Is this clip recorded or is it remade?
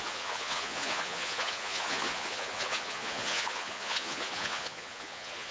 remade